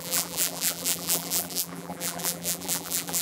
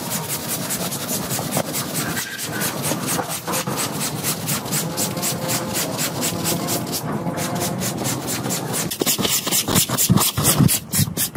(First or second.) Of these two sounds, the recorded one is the second